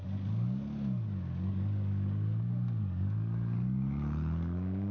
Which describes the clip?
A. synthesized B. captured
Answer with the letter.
A